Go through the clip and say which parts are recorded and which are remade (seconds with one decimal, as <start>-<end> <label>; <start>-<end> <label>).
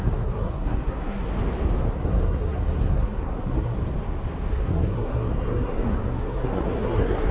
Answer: 0.0-1.3 remade; 1.3-1.9 recorded; 1.9-3.8 remade; 3.8-4.5 recorded; 4.5-7.3 remade